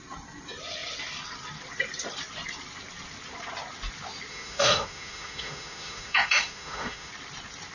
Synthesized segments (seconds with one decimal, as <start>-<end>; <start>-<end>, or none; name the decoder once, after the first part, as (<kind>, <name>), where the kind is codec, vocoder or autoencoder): 4.3-7.1 (autoencoder, DAC-VAE)